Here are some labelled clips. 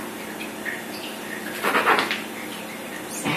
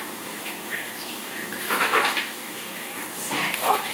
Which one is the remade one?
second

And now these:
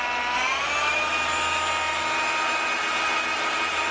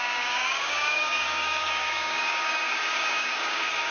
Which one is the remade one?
second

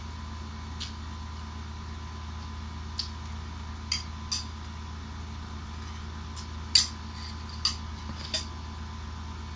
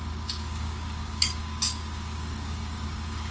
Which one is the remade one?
second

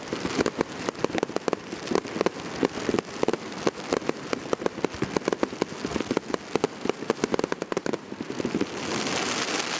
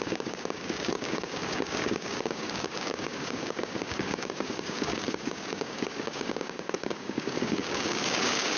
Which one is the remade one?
second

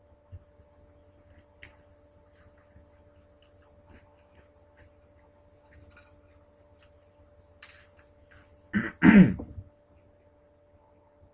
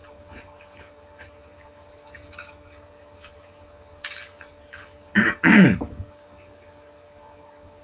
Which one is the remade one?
second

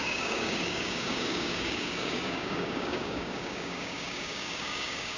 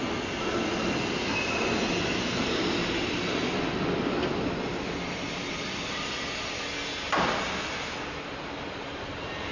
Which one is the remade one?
first